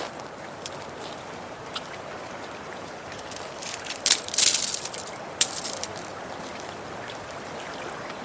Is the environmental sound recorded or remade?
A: remade